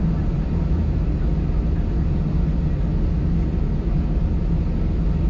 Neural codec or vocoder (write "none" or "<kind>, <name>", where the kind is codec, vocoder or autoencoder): none